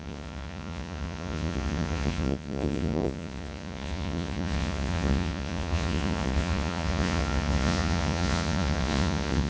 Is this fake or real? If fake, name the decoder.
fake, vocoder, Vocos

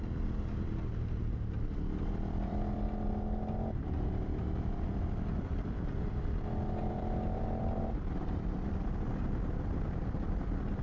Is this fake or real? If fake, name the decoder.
fake, vocoder, BigVGAN v2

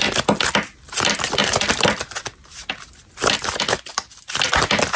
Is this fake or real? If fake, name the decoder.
real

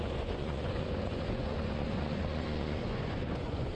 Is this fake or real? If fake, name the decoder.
fake, vocoder, Vocos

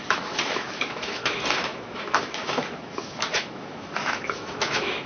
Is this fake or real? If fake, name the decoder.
fake, autoencoder, DAC-VAE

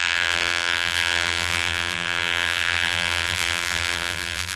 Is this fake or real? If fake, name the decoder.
fake, vocoder, BigVGAN v2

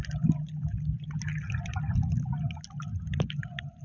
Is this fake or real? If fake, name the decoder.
real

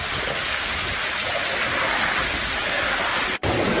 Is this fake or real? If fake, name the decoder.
real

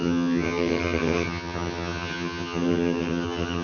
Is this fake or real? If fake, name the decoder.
fake, vocoder, HiFi-GAN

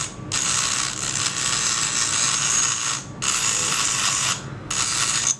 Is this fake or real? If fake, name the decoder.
real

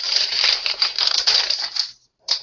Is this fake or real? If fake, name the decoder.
fake, vocoder, BigVGAN v2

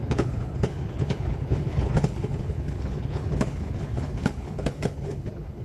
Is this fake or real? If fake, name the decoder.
fake, codec, HILCodec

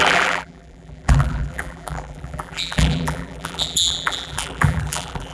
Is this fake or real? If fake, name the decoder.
fake, vocoder, BigVGAN v2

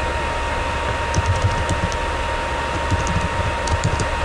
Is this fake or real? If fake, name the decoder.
real